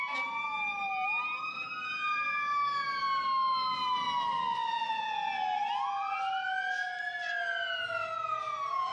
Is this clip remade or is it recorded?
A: recorded